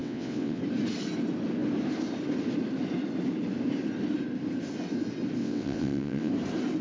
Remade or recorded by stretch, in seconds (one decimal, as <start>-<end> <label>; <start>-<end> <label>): 0.0-0.6 remade; 0.6-5.4 recorded; 5.4-6.3 remade; 6.3-6.8 recorded